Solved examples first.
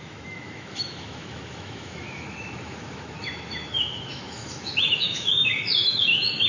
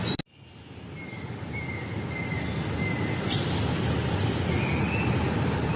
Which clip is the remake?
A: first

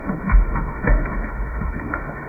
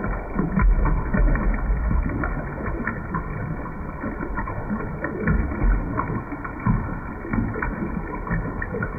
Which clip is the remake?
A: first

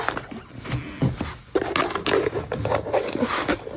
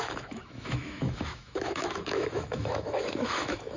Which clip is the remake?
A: second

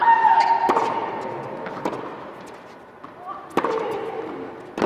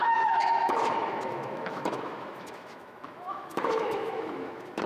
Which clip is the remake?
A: second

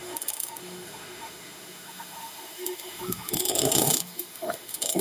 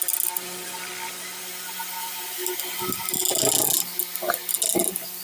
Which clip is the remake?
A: first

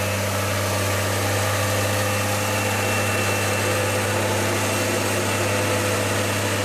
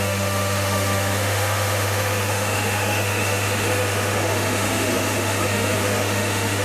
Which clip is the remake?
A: second